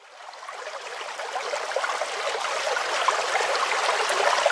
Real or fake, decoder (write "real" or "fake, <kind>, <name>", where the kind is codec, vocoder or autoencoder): real